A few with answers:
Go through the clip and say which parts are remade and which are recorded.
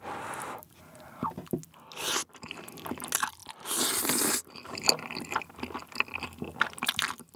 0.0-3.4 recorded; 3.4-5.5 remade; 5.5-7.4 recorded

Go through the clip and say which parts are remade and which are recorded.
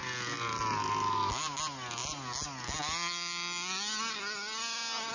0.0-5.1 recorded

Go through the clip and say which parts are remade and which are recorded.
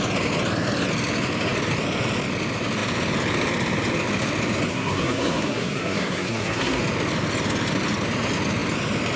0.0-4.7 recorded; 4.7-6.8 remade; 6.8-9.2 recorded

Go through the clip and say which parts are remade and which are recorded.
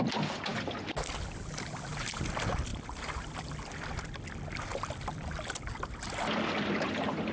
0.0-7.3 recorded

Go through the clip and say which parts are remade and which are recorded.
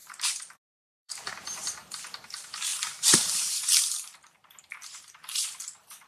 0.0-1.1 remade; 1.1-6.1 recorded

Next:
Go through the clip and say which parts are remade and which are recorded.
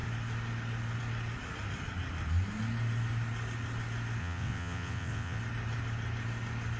0.0-4.2 recorded; 4.2-5.4 remade; 5.4-6.8 recorded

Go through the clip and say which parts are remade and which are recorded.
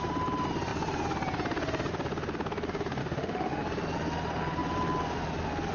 0.0-3.0 recorded; 3.0-3.6 remade; 3.6-5.7 recorded